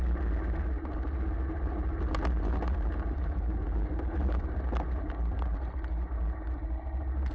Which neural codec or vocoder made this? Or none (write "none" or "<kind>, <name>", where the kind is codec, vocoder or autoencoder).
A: none